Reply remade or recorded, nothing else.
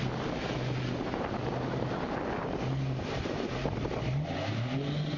recorded